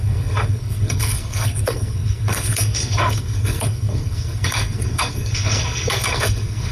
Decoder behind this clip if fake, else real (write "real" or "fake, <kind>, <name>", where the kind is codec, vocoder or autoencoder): fake, codec, SNAC